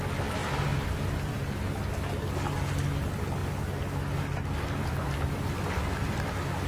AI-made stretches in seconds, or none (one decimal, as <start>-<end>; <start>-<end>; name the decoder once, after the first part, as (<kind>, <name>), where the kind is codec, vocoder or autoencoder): 0.4-1.8 (vocoder, BigVGAN v2)